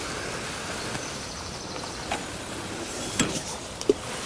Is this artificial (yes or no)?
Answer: no